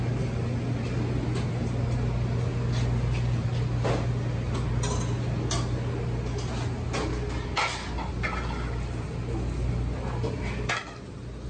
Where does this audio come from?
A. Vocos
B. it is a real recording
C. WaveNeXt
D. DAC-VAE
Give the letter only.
B